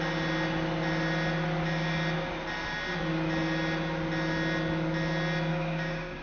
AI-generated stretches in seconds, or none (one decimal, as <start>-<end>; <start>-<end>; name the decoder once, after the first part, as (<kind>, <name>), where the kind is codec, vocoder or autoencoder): 5.5-6.2 (codec, DAC)